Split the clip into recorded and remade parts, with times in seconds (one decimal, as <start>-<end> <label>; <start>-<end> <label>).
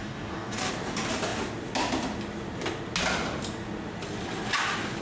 0.0-0.7 remade; 0.7-5.0 recorded